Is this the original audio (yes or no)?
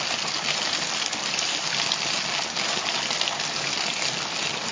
yes